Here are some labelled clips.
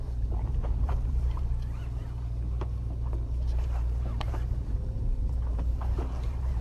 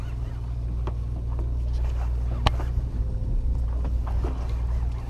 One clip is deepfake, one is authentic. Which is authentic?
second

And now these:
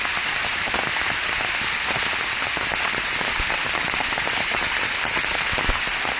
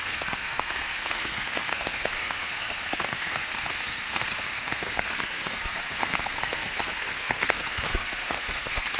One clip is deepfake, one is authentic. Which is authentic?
first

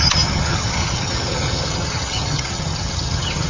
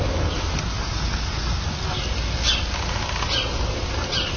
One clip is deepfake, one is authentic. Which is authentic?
second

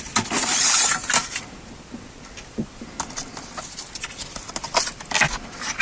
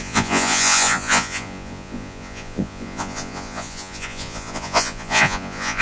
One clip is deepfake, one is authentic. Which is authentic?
first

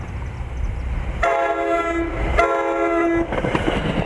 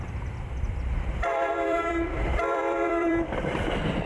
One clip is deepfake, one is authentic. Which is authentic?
first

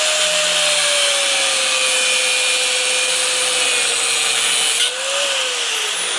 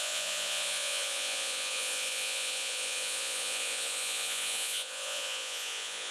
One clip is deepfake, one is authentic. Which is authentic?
first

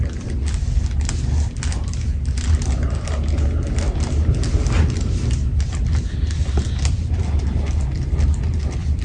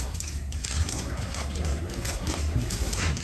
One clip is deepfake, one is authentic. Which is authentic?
first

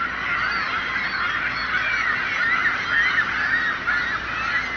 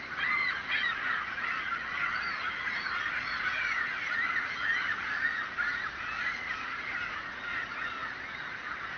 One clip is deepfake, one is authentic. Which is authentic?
first